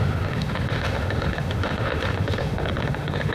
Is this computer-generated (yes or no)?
yes